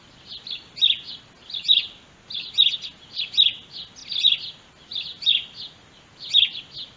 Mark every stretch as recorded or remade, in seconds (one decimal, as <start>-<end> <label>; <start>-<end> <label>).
0.0-7.0 recorded